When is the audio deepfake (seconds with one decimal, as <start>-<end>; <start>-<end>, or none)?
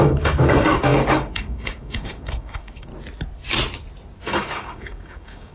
0.0-2.9; 4.2-5.5